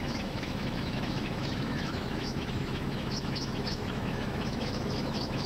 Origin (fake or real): fake